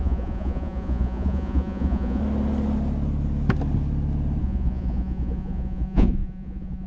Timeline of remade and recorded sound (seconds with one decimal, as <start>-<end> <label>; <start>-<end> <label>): 0.0-2.2 remade; 2.2-4.4 recorded; 4.4-6.9 remade